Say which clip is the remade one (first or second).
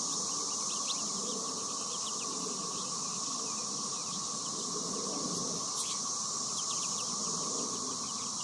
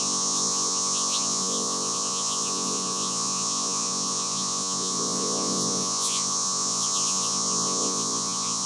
second